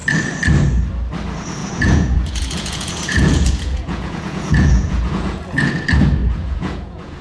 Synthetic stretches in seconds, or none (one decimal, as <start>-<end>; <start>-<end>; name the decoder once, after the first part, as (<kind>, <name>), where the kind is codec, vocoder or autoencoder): 1.6-5.7 (vocoder, Vocos); 6.2-7.2